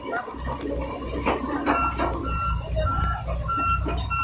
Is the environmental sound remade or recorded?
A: recorded